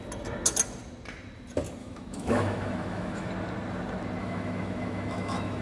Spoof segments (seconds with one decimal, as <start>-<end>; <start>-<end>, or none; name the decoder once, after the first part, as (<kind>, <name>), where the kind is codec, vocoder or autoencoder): 1.8-3.3 (autoencoder, DAC-VAE); 4.2-5.6